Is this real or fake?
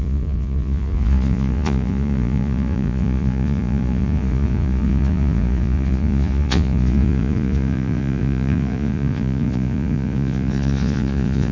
fake